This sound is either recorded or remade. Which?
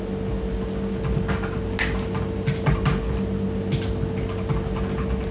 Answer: recorded